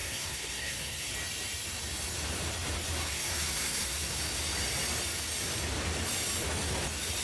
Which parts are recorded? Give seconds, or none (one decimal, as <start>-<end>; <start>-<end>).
1.1-3.0; 4.2-7.2